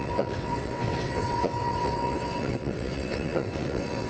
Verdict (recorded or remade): remade